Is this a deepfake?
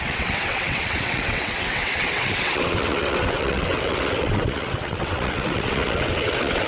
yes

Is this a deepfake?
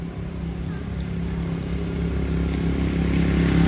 no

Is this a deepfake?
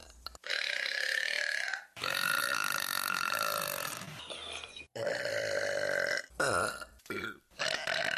yes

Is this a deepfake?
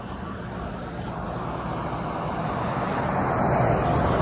no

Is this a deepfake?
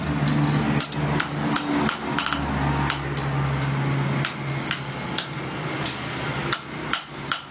no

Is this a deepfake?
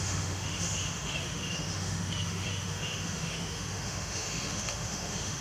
yes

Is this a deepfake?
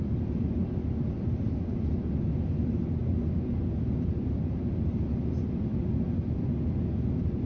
no